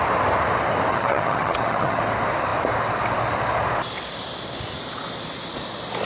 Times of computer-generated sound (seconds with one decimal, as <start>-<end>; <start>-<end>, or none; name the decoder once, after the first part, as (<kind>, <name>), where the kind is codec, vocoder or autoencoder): 0.9-2.0 (vocoder, HiFi-GAN)